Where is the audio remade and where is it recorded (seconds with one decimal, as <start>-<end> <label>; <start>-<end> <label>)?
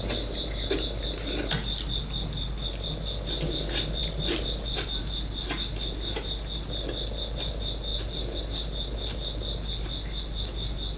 0.0-11.0 recorded